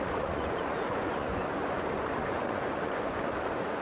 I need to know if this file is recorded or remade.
remade